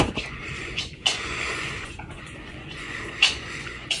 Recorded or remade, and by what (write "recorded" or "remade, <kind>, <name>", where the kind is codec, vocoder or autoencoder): remade, vocoder, Vocos